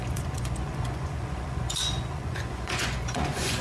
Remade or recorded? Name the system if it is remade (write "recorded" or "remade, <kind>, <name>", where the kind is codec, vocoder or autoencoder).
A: remade, vocoder, Vocos